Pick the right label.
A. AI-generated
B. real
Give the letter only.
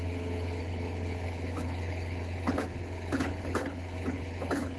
A